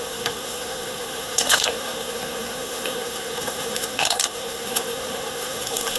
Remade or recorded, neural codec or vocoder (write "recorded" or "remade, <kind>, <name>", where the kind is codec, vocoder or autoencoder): remade, codec, SNAC